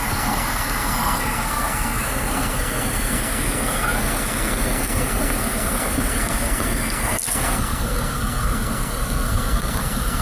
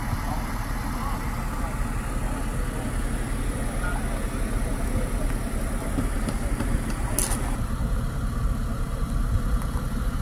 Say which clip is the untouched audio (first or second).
second